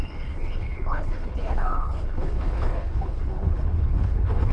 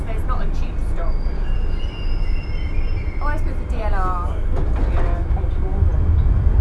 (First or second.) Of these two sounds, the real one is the second